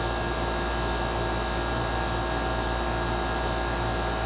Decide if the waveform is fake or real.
real